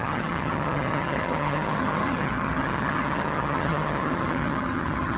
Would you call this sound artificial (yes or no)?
yes